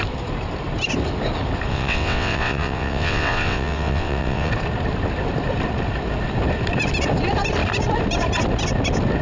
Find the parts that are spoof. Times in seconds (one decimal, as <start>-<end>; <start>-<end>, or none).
1.7-4.5